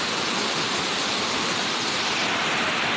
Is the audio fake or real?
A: fake